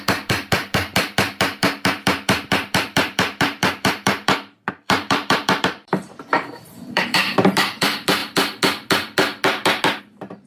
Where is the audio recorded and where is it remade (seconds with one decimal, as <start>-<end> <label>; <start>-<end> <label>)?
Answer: 0.0-8.2 remade; 8.2-10.0 recorded; 10.0-10.5 remade